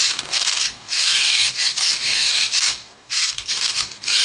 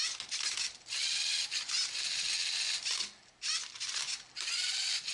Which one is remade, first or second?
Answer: first